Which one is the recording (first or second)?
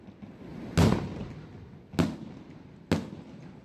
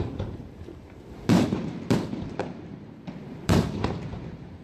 first